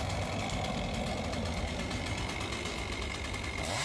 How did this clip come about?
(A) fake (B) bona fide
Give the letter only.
B